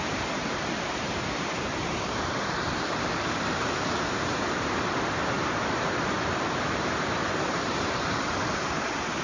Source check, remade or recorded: remade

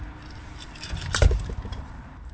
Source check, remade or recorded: remade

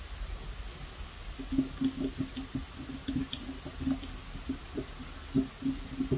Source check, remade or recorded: recorded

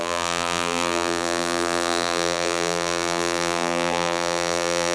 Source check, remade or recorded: remade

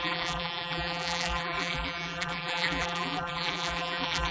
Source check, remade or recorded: remade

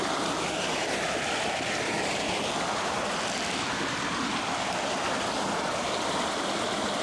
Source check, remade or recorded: recorded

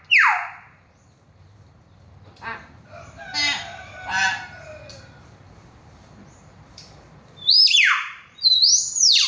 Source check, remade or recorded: remade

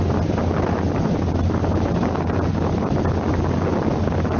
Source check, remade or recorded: recorded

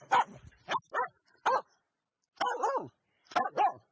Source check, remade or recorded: recorded